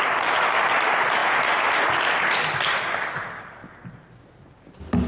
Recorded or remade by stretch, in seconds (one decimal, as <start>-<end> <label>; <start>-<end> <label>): 0.0-5.1 recorded